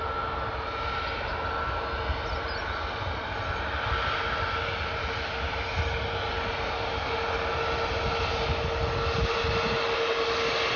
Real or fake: real